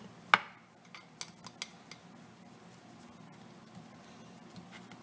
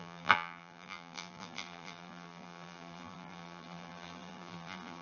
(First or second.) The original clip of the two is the first